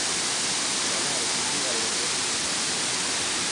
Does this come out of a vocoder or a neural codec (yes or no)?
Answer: no